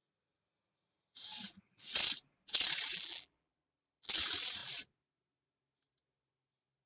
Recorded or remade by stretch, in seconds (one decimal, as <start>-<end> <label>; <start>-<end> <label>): 0.0-2.9 recorded; 2.9-4.1 remade; 4.1-6.9 recorded